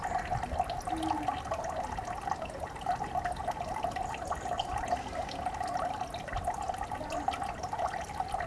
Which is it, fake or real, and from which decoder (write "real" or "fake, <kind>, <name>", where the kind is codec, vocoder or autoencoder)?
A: real